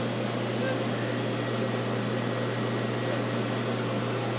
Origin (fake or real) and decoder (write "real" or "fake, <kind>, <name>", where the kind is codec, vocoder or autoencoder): real